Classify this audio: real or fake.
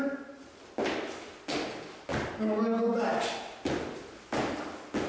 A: real